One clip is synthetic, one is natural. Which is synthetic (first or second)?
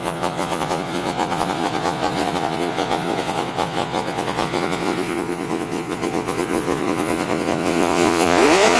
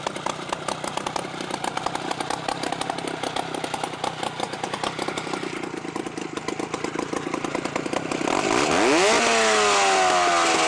first